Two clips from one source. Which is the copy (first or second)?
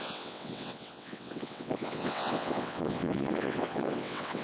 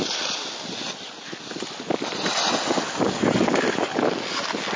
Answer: first